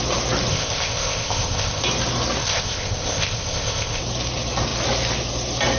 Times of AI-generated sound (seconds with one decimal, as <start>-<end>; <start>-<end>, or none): 0.5-1.8; 2.4-4.0